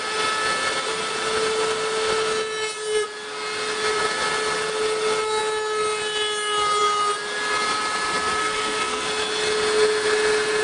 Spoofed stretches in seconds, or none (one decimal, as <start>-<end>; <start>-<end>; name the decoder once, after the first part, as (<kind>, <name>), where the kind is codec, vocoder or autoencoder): 8.4-9.1 (codec, SNAC)